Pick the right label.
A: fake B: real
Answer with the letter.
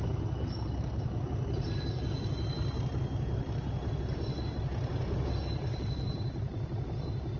B